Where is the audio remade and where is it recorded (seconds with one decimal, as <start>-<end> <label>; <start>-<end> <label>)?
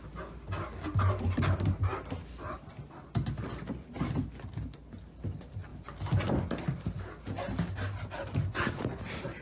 0.0-9.4 recorded